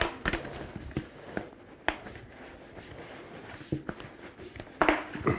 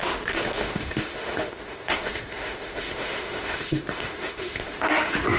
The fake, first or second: second